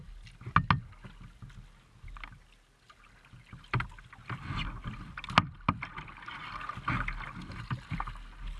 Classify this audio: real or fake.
real